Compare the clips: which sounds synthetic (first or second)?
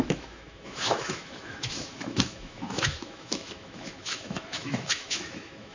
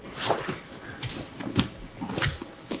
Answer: first